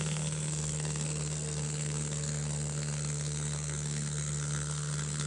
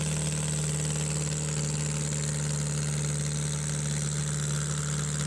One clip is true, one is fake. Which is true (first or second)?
second